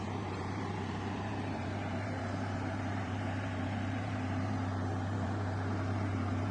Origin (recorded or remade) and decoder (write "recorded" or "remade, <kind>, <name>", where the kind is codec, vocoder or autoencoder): remade, vocoder, BigVGAN v2